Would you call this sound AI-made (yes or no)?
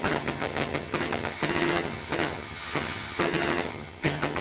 yes